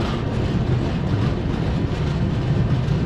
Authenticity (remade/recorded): recorded